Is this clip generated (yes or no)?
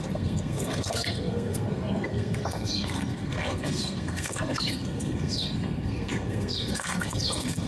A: yes